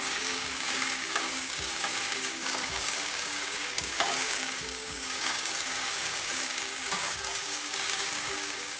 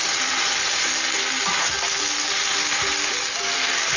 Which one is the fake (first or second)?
first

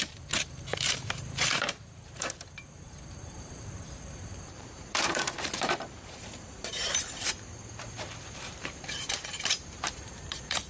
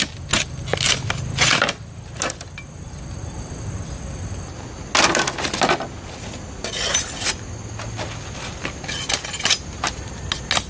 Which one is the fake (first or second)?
first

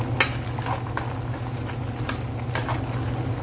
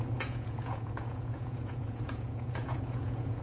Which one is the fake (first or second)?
second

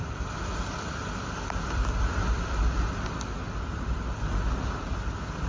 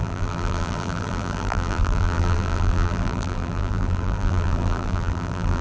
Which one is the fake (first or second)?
second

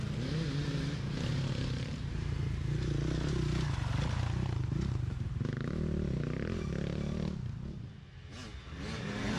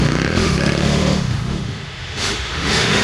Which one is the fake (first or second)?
second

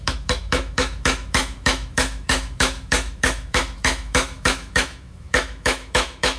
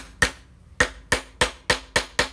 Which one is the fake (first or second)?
first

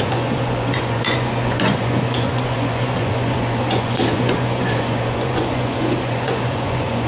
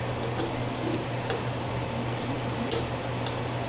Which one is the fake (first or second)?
first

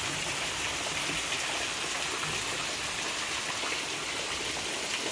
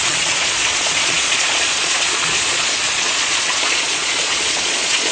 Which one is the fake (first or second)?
second